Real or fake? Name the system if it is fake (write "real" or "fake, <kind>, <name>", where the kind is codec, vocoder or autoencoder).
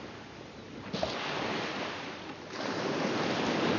real